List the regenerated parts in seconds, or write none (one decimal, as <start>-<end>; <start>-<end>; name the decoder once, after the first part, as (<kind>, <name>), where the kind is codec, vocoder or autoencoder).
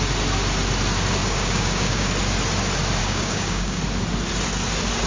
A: 1.2-2.1 (codec, DAC); 3.0-3.8